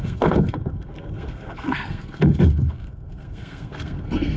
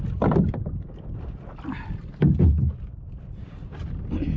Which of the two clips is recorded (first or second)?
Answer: second